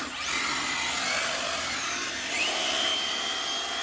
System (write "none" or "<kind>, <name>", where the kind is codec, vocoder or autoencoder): none